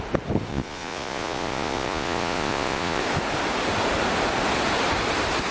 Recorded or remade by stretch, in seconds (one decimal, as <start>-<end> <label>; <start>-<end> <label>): 0.0-0.5 recorded; 0.5-3.0 remade; 3.0-5.5 recorded